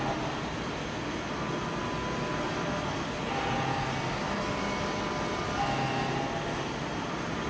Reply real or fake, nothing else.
real